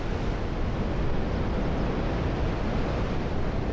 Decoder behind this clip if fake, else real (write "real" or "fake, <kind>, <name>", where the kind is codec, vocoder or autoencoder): real